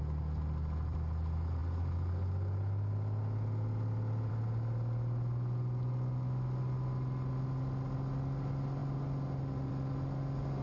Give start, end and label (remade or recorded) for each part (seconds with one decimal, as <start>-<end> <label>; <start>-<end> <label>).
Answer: 0.0-10.6 recorded